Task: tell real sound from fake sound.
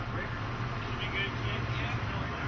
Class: real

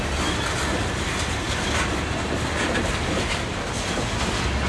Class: real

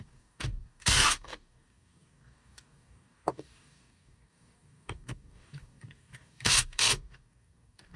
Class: fake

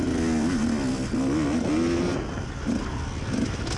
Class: real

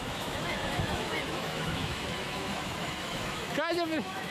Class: fake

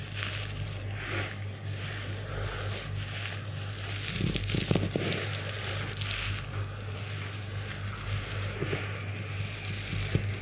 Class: real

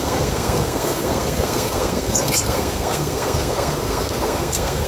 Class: fake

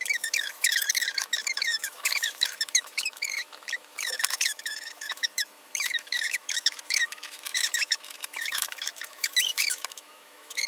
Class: fake